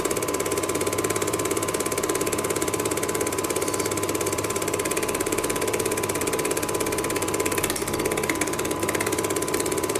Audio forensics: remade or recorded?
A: remade